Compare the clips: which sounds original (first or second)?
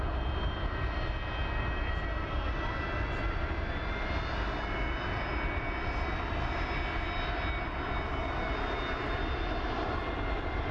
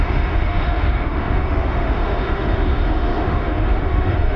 first